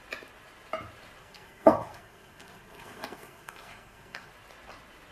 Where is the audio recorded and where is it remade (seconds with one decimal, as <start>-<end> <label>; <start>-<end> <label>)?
0.0-1.2 recorded; 1.2-4.3 remade; 4.3-5.1 recorded